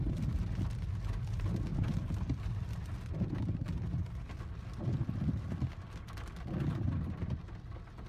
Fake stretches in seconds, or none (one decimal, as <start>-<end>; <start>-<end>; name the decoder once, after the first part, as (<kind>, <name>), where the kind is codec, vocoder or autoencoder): none